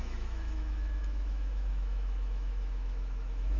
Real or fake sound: fake